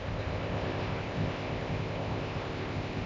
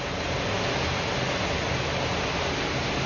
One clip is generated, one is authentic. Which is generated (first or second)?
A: first